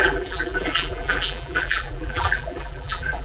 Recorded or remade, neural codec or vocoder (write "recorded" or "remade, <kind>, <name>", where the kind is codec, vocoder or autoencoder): remade, vocoder, BigVGAN v2